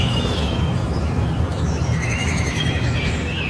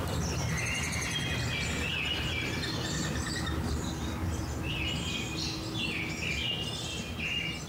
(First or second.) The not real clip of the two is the first